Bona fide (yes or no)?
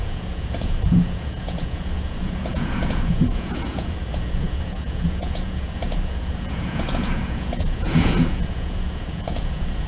no